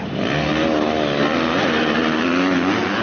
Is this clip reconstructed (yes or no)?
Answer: no